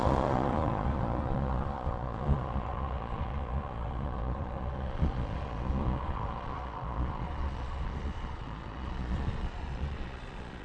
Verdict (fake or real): fake